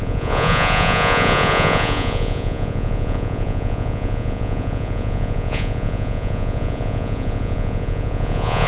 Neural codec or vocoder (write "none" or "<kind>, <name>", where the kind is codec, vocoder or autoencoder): vocoder, Vocos